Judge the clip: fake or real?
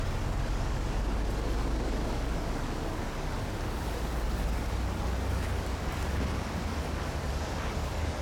fake